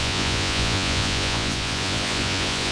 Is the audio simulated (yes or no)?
yes